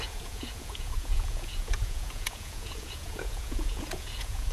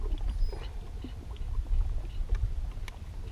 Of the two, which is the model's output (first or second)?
first